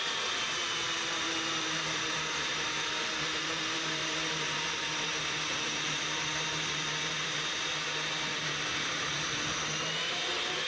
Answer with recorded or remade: remade